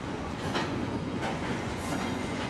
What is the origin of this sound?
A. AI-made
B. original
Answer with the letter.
A